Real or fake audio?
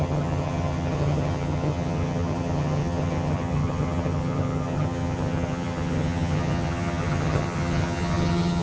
fake